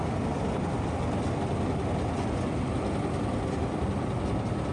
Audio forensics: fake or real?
real